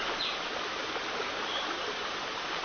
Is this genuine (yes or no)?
yes